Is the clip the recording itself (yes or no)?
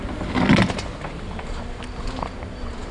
yes